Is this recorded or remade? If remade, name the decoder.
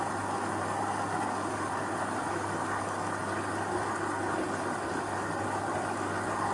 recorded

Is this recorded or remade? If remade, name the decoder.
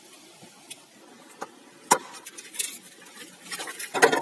recorded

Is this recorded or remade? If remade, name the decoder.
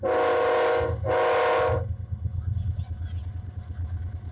recorded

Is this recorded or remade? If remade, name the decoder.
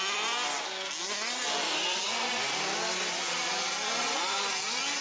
recorded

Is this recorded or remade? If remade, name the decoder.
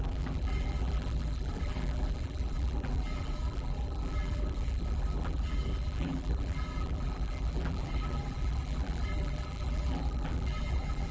remade, vocoder, BigVGAN v2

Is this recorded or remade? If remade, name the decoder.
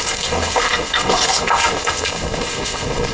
remade, codec, SNAC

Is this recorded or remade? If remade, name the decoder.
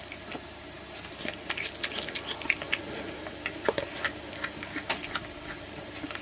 recorded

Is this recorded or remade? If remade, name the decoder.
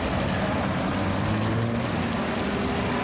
recorded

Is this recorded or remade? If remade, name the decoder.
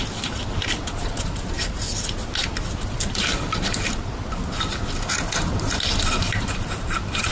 recorded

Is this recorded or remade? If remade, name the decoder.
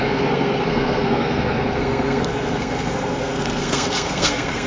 remade, codec, SNAC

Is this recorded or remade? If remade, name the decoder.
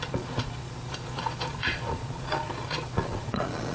remade, vocoder, Vocos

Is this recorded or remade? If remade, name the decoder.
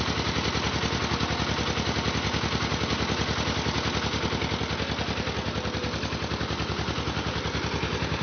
recorded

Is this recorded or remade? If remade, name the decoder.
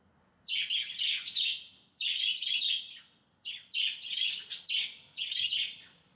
recorded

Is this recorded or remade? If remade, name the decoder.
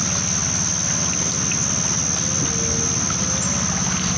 recorded